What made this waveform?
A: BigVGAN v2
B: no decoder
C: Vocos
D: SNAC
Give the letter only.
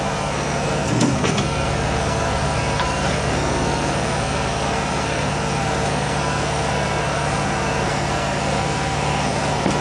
D